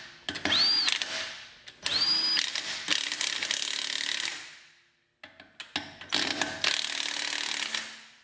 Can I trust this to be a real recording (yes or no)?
yes